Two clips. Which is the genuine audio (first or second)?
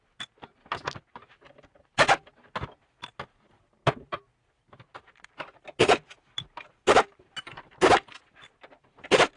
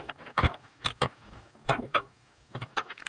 first